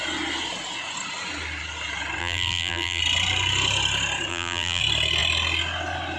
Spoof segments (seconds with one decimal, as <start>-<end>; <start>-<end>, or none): 2.2-3.0; 4.3-4.8